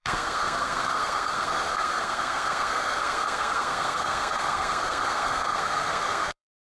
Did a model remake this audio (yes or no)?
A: yes